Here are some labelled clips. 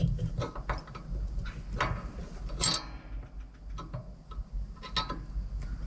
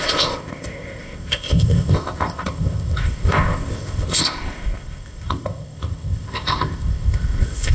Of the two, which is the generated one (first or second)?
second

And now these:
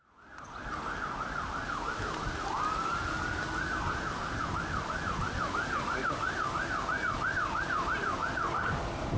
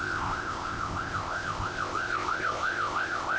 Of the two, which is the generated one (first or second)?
second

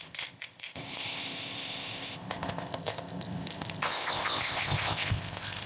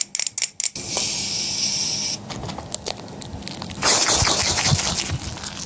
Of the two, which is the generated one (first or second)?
first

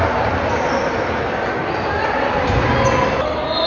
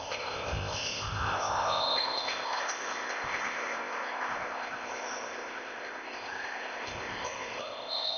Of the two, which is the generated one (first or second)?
second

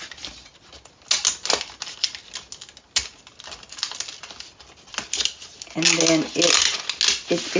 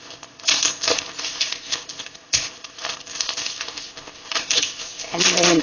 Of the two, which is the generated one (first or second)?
second